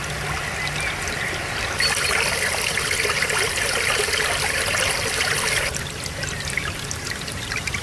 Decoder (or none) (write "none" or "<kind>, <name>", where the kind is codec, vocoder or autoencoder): none